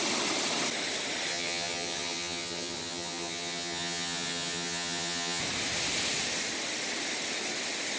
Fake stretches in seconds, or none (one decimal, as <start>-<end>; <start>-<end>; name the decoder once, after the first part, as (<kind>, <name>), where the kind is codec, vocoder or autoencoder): 1.3-5.4 (vocoder, HiFi-GAN)